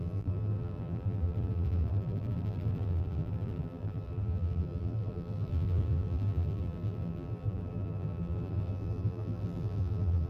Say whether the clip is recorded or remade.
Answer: remade